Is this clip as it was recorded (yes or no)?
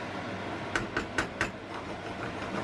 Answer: yes